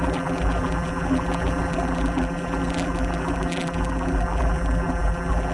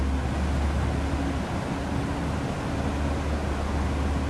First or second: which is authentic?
second